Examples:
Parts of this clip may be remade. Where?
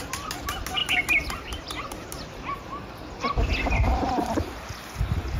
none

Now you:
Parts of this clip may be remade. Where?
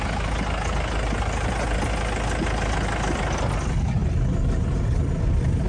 none